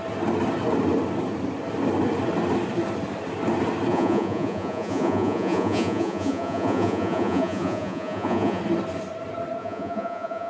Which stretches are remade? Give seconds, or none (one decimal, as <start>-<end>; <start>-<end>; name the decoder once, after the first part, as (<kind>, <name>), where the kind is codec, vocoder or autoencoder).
3.9-8.6 (vocoder, Vocos); 9.6-10.5